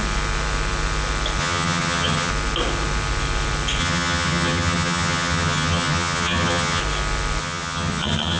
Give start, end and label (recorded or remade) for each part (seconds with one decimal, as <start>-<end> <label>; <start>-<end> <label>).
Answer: 0.0-1.4 recorded; 1.4-2.3 remade; 2.3-3.8 recorded; 3.8-6.8 remade; 6.8-7.4 recorded; 7.4-8.4 remade